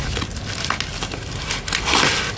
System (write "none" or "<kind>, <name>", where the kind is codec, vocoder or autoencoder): none